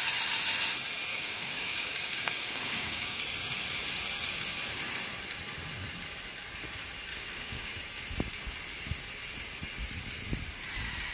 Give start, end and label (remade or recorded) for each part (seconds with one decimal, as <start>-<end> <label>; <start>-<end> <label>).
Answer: 0.0-1.1 recorded; 1.1-3.2 remade; 3.2-7.1 recorded; 7.1-7.7 remade; 7.7-11.1 recorded